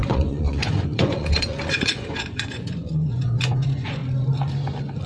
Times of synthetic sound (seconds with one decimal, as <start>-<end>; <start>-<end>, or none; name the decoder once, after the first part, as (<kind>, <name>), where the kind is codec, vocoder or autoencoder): 0.0-4.0 (vocoder, Vocos)